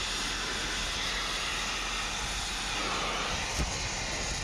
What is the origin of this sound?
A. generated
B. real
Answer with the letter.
B